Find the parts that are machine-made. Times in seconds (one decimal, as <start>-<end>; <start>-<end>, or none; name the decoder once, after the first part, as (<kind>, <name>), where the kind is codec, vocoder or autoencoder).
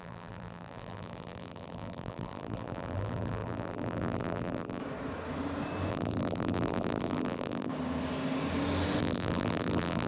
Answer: 0.0-4.8 (vocoder, BigVGAN v2); 5.9-7.7; 9.0-10.1